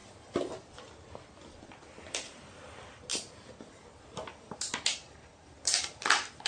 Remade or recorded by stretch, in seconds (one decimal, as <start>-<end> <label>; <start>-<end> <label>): 0.0-0.8 remade; 0.8-3.1 recorded; 3.1-6.5 remade